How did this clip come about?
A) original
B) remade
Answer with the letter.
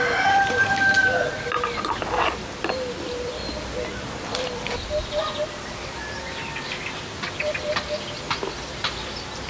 B